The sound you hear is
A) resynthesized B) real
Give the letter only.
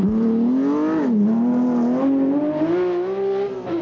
B